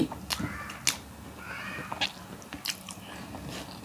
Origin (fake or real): real